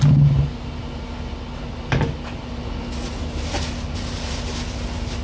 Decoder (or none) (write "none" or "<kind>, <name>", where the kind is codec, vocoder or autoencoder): none